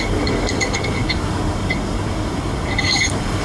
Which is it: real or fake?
fake